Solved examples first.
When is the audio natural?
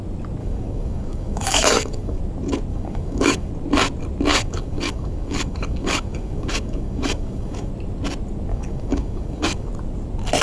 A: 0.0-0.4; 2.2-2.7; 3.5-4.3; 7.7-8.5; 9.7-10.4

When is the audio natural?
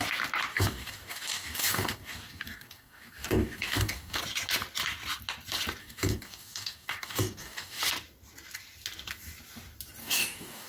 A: 0.0-0.5; 4.2-5.8; 7.8-10.0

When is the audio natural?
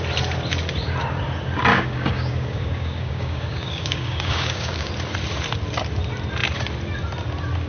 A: 0.0-1.7; 4.9-7.7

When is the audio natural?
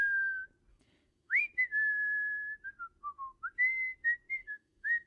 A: 0.0-0.7; 1.4-4.4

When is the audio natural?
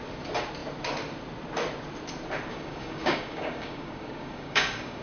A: 0.0-2.5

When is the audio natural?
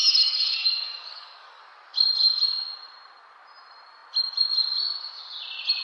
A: 1.6-5.8